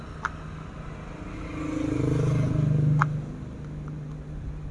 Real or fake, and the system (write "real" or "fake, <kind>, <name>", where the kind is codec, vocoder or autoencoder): real